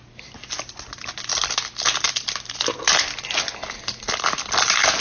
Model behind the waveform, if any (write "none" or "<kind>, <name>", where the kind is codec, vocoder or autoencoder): none